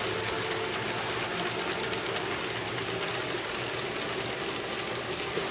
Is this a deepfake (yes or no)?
no